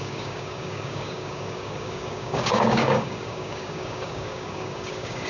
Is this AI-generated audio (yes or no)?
yes